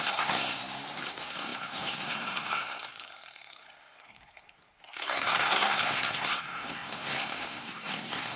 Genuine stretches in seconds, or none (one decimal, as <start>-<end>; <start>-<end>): 0.6-1.1